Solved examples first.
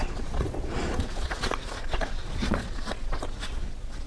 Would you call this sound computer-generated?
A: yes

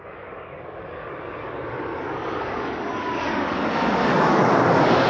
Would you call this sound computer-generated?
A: yes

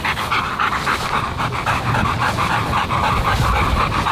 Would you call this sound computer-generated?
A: no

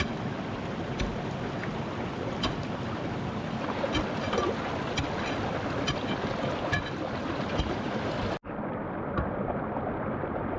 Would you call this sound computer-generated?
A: no